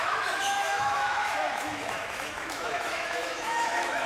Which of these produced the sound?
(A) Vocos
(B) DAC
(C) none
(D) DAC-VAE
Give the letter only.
D